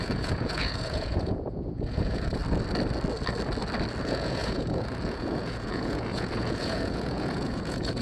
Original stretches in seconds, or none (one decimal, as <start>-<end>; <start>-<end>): 2.4-4.0